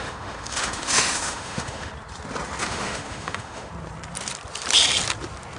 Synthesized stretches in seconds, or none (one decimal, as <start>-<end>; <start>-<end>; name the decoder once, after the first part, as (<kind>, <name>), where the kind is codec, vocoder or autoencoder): 0.0-1.9 (autoencoder, DAC-VAE); 2.6-3.7